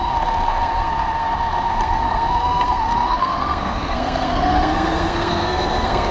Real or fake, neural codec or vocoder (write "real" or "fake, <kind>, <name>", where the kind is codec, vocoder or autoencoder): fake, codec, SNAC